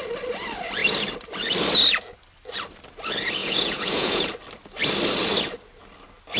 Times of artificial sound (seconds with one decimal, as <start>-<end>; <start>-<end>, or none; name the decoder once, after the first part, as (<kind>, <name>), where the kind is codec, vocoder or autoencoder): 3.4-4.2 (vocoder, Vocos)